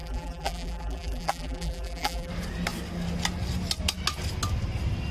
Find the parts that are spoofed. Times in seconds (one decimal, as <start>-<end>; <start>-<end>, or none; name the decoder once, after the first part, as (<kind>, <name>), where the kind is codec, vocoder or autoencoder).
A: 0.0-2.3 (vocoder, BigVGAN v2)